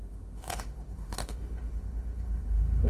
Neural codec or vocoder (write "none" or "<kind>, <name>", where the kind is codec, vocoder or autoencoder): autoencoder, DAC-VAE